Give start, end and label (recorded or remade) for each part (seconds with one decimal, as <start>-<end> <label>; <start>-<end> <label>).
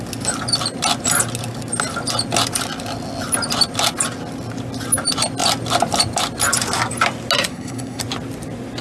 0.0-7.5 recorded; 7.5-8.0 remade; 8.0-8.8 recorded